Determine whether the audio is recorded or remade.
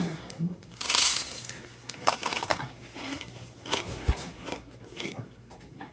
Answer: remade